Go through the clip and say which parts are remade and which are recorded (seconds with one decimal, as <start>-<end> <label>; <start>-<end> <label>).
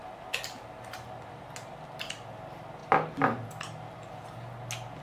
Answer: 0.0-5.0 recorded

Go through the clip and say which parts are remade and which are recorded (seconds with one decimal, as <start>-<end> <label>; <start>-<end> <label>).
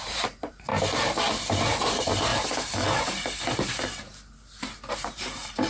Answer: 0.0-0.7 remade; 0.7-1.8 recorded; 1.8-2.3 remade; 2.3-4.9 recorded; 4.9-5.7 remade